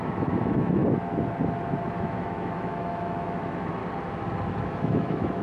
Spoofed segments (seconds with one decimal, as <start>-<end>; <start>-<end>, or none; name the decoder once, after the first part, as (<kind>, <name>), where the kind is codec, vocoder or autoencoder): 0.0-0.8 (autoencoder, DAC-VAE); 2.0-3.8; 4.6-5.4